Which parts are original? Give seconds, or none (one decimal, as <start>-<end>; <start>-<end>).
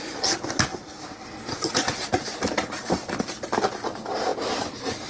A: 0.0-0.7; 3.6-5.1